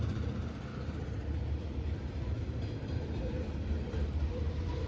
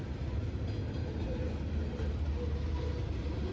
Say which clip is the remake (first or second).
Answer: first